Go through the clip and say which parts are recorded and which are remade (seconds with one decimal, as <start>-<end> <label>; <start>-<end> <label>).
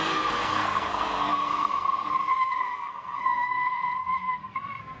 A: 0.0-5.0 remade